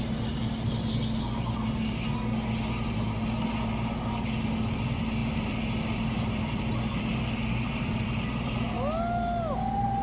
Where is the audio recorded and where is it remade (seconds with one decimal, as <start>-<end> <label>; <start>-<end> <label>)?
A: 0.0-5.2 recorded; 5.2-8.3 remade; 8.3-10.0 recorded